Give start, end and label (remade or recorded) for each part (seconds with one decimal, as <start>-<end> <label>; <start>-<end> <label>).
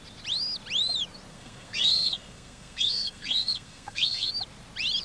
0.0-1.3 recorded; 1.3-4.3 remade; 4.3-5.0 recorded